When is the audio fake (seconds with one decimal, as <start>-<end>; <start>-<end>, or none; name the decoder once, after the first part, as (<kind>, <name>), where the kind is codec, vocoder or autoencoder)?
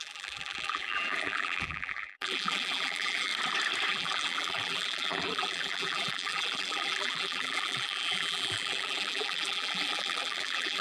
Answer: 0.0-3.3 (vocoder, BigVGAN v2); 3.9-10.8